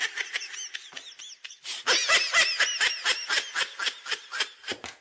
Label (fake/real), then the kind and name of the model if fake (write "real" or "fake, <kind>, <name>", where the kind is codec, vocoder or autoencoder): real